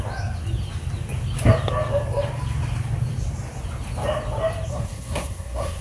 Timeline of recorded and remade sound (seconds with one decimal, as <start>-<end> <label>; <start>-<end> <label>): 0.0-4.7 recorded; 4.7-5.8 remade